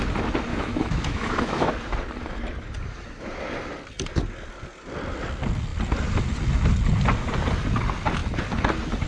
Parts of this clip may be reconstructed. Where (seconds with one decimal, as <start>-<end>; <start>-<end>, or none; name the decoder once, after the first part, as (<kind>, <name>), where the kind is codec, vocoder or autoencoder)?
0.5-1.7 (autoencoder, DAC-VAE)